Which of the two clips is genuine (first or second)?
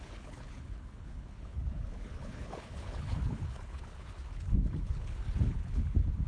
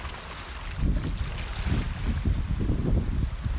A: second